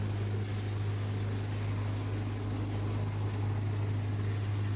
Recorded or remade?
recorded